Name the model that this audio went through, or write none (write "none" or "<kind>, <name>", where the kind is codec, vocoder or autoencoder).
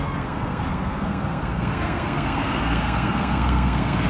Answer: codec, SNAC